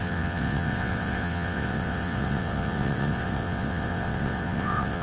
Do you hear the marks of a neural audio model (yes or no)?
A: yes